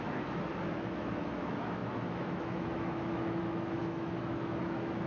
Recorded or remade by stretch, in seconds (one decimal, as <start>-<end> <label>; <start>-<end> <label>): 0.0-5.1 remade